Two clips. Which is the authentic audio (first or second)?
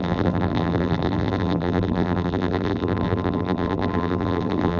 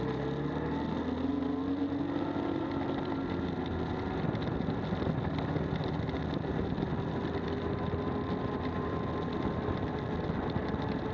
second